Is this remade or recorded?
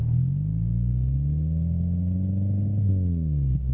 recorded